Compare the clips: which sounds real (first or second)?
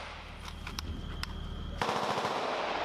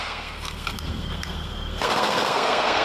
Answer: first